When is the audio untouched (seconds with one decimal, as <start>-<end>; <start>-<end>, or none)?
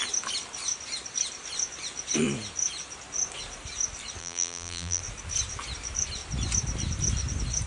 0.0-4.2; 5.0-7.7